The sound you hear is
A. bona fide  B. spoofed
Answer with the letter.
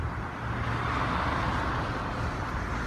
A